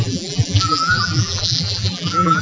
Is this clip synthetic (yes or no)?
yes